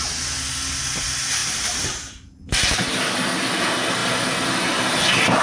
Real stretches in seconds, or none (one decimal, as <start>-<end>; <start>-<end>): 0.0-1.4; 3.1-5.4